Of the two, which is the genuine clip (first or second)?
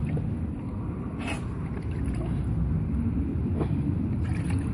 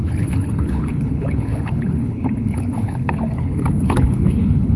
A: first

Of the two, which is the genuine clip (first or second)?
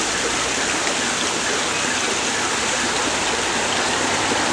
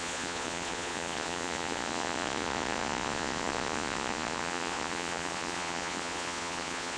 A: first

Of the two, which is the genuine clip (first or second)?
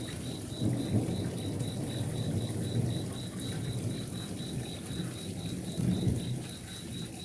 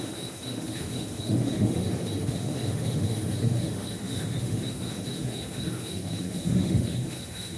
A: first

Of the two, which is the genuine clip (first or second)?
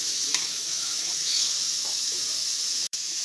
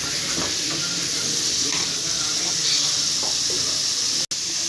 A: second